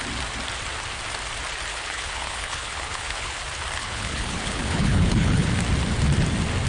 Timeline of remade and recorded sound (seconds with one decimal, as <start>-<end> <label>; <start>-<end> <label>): 0.0-1.7 recorded; 1.7-3.4 remade; 3.4-3.8 recorded; 3.8-5.5 remade; 5.5-6.7 recorded